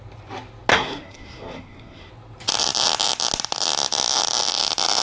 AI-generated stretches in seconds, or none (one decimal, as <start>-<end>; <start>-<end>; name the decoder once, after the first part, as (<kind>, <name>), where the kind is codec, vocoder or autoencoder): 0.7-2.1 (codec, SNAC)